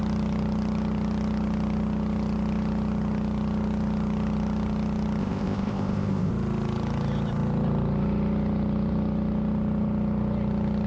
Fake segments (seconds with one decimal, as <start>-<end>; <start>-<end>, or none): 5.2-6.3